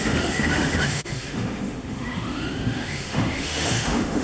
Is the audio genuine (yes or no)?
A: no